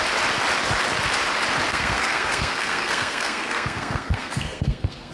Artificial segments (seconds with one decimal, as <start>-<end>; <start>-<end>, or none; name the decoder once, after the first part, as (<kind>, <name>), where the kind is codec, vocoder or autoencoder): 1.7-5.1 (codec, SNAC)